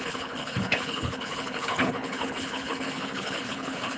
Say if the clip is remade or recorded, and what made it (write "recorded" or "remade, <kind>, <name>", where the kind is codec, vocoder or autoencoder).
remade, codec, HILCodec